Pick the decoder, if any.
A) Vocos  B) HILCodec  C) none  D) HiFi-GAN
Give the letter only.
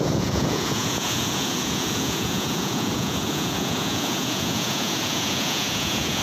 A